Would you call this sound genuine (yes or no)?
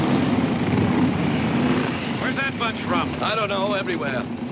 yes